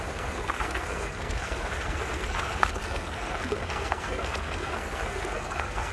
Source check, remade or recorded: remade